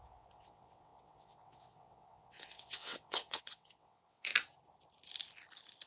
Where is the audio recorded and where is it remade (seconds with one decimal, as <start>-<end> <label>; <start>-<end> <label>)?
0.0-4.3 remade; 4.3-5.9 recorded